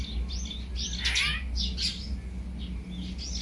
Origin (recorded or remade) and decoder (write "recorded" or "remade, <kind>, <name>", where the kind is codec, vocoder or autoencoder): recorded